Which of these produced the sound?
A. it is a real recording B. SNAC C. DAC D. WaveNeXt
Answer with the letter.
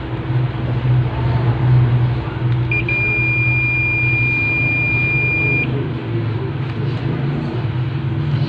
A